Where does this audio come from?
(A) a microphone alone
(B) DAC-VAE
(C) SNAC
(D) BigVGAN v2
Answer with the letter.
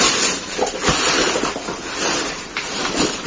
A